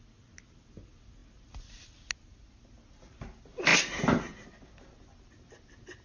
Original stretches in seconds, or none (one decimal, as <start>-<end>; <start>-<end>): 0.0-6.0